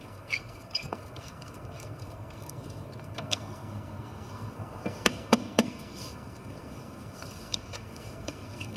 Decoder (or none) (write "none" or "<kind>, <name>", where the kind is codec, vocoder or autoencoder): codec, SNAC